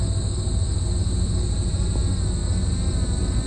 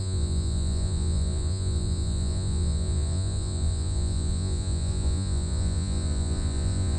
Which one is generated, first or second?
second